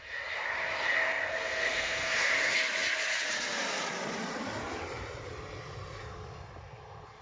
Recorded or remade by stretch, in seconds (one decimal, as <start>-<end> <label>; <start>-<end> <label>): 0.0-1.3 recorded; 1.3-2.3 remade; 2.3-7.2 recorded